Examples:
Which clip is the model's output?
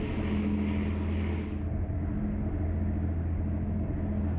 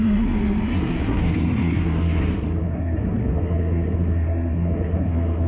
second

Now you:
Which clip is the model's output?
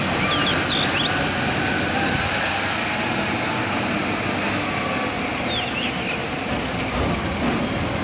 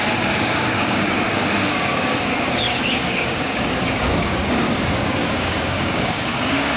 second